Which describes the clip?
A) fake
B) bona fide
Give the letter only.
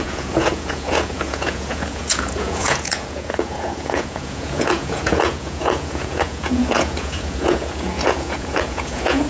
A